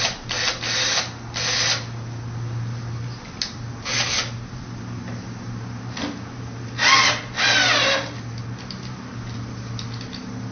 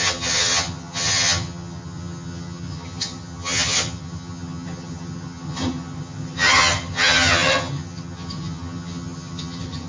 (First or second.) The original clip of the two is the first